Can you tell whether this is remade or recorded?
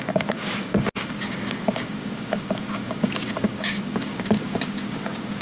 remade